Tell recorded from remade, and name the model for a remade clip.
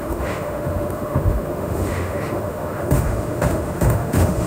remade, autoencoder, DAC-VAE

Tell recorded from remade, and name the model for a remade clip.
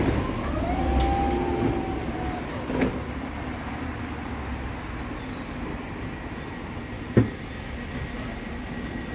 recorded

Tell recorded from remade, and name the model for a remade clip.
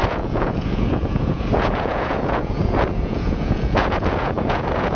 remade, vocoder, Vocos